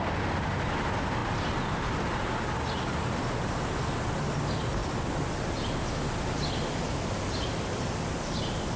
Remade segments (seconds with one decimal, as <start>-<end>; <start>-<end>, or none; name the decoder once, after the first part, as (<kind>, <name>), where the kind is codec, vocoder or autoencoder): none